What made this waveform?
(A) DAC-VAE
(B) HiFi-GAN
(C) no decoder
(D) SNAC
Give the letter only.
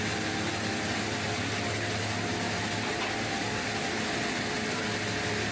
C